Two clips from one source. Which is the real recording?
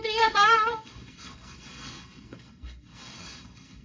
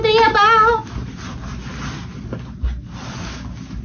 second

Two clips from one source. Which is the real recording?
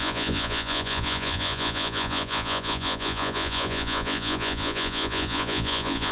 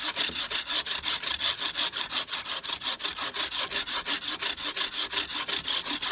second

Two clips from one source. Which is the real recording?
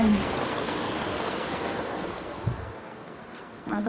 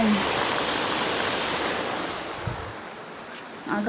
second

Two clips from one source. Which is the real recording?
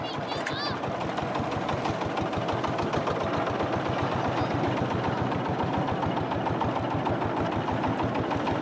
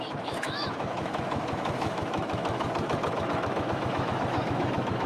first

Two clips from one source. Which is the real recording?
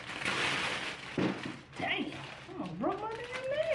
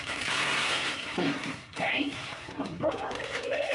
first